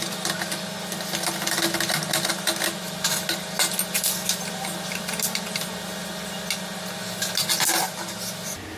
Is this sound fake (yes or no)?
no